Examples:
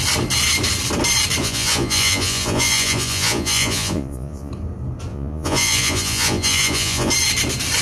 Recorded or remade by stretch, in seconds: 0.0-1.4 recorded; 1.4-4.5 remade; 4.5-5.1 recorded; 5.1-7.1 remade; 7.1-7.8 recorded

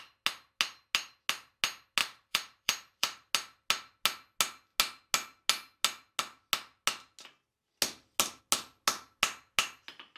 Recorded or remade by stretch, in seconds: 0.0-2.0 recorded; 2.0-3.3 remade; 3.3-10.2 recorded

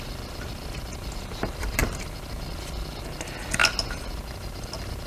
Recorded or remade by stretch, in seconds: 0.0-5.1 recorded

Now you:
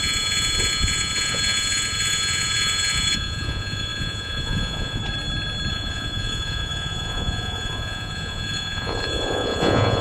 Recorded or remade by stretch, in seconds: 0.0-5.0 remade; 5.0-5.7 recorded; 5.7-10.0 remade

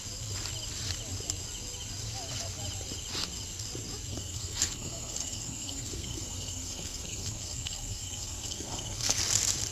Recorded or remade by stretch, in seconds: 0.0-4.1 recorded; 4.1-9.2 remade; 9.2-9.7 recorded

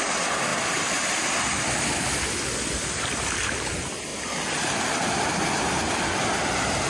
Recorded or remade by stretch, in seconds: 0.0-0.5 recorded; 0.5-1.4 remade; 1.4-6.9 recorded

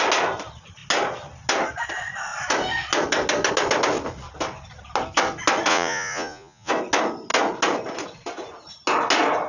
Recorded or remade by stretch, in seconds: 0.0-5.7 recorded; 5.7-6.7 remade; 6.7-9.5 recorded

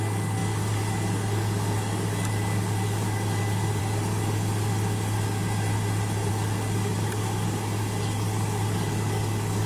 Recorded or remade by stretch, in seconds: 0.0-4.7 remade; 4.7-6.3 recorded; 6.3-9.7 remade